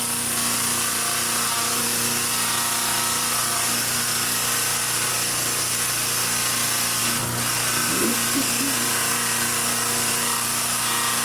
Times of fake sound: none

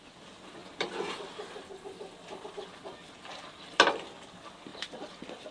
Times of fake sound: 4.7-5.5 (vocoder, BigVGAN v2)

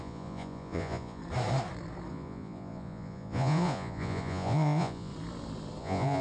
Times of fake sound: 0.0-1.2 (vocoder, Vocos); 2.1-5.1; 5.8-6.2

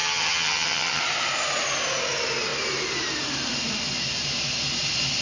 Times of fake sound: 0.0-1.0 (vocoder, HiFi-GAN)